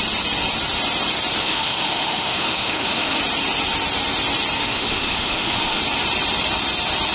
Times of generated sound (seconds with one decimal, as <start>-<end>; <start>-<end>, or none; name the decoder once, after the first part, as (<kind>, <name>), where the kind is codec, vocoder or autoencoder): 1.4-3.2 (autoencoder, DAC-VAE); 4.6-5.8